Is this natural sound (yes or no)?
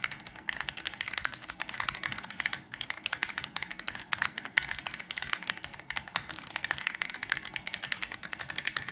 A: no